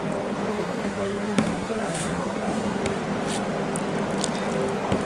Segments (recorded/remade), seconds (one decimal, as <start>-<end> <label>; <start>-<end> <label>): 0.0-0.5 recorded; 0.5-2.8 remade; 2.8-5.1 recorded